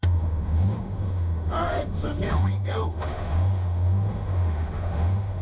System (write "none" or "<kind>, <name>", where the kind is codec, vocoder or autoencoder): autoencoder, DAC-VAE